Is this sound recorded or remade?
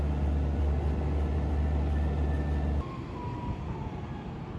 recorded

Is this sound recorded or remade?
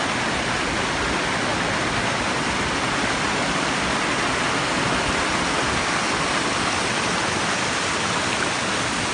recorded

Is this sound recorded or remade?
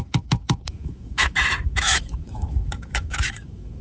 remade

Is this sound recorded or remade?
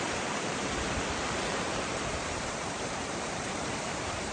remade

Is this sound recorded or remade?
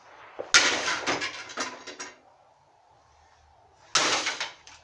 recorded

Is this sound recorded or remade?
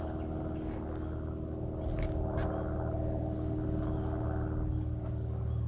recorded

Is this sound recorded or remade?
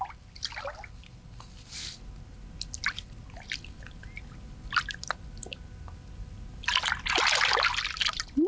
recorded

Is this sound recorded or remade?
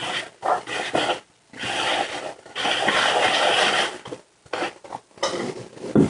recorded